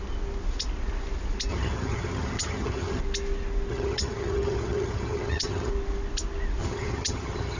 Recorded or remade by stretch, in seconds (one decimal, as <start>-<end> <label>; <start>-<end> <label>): 0.0-1.5 recorded; 1.5-3.0 remade; 3.0-3.7 recorded; 3.7-5.7 remade; 5.7-6.6 recorded; 6.6-7.6 remade